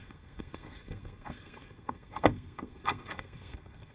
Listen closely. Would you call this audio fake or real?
fake